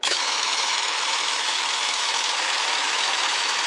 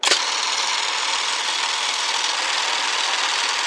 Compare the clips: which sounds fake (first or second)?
first